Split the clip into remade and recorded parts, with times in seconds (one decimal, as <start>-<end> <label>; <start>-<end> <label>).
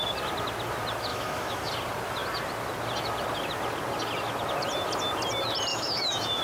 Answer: 0.0-1.1 recorded; 1.1-1.7 remade; 1.7-5.7 recorded; 5.7-6.4 remade